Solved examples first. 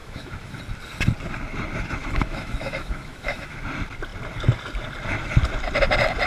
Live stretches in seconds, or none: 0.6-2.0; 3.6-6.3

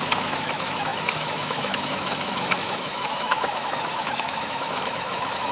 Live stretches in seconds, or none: none